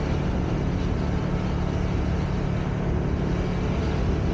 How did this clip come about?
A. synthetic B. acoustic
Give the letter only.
B